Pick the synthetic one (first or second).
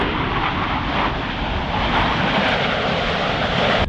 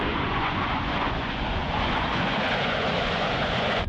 second